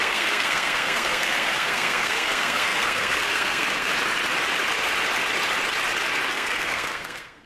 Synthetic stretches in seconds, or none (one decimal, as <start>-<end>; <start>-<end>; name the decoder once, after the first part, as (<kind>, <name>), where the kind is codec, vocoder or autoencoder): 0.0-3.9 (codec, SNAC); 6.3-7.5